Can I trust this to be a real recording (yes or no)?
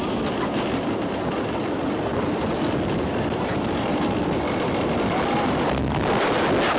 yes